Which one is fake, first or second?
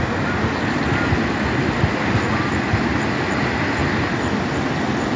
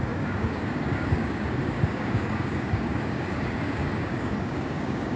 second